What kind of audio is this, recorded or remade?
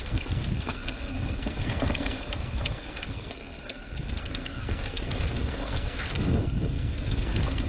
remade